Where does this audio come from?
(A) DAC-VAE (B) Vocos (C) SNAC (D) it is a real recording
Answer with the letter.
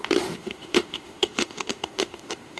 A